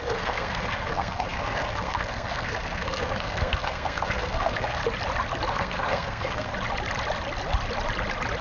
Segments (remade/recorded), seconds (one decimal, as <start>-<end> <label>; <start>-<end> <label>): 0.0-4.8 remade; 4.8-5.5 recorded; 5.5-6.5 remade; 6.5-8.4 recorded